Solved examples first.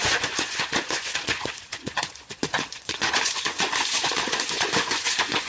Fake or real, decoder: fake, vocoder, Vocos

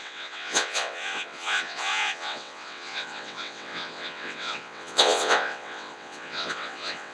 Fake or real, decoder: fake, vocoder, WaveNeXt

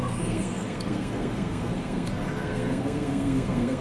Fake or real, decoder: fake, codec, SNAC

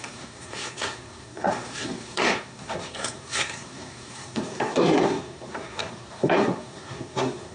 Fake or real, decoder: fake, codec, SNAC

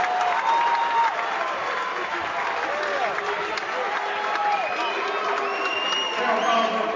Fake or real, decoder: real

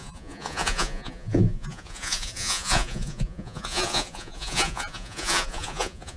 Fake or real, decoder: fake, vocoder, Vocos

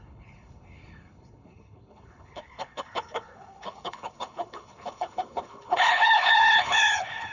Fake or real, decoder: fake, codec, HILCodec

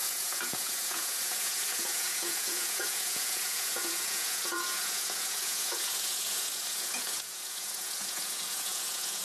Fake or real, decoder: fake, vocoder, Vocos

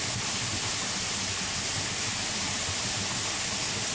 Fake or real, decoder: real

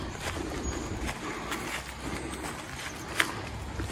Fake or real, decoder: real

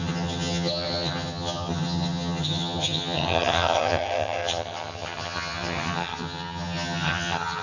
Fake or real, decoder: fake, vocoder, HiFi-GAN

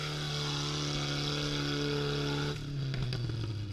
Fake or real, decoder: real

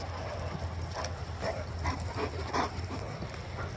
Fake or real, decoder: real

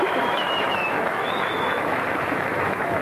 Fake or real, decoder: fake, autoencoder, DAC-VAE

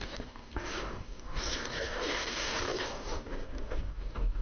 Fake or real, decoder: fake, codec, DAC